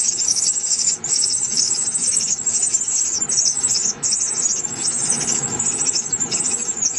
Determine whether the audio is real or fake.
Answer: fake